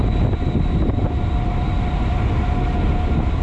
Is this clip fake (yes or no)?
no